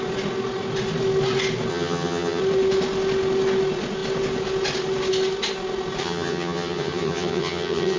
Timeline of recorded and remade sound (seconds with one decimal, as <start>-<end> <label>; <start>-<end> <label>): 0.0-1.7 recorded; 1.7-2.4 remade; 2.4-6.0 recorded; 6.0-8.0 remade